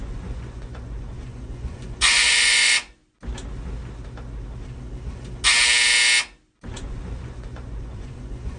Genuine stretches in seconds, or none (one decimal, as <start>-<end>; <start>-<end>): 3.0-6.7